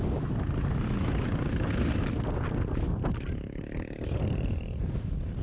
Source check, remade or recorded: recorded